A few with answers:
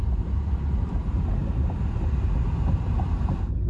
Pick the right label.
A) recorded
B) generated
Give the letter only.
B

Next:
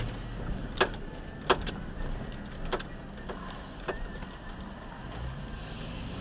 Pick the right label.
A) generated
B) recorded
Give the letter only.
B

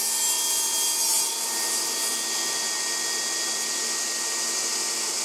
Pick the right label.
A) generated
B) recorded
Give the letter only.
B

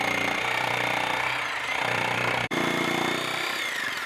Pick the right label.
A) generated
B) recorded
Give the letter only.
A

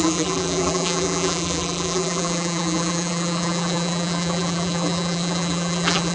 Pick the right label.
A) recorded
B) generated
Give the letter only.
B